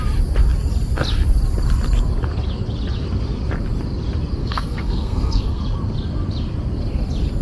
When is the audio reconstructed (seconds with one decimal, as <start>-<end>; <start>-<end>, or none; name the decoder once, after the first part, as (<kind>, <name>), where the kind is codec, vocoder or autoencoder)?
4.4-5.6 (codec, SNAC)